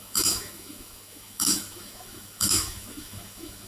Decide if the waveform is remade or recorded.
remade